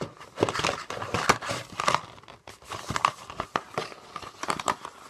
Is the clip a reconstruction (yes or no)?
no